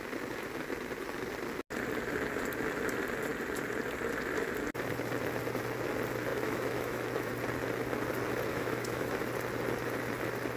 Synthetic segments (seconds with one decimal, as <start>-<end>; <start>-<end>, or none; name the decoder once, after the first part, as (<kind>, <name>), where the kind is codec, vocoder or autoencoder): 6.3-7.3 (autoencoder, DAC-VAE); 8.5-9.2